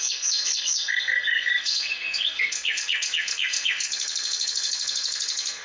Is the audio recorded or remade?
remade